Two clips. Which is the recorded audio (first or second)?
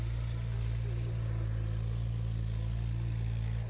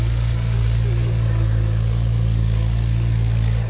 first